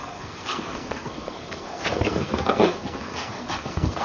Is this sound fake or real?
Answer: fake